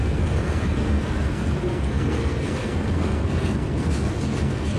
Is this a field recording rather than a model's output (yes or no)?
no